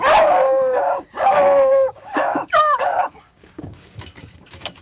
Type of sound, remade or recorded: remade